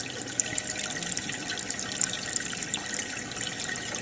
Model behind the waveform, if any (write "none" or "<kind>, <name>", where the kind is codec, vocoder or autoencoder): none